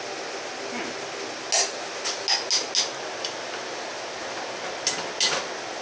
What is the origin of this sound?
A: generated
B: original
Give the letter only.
B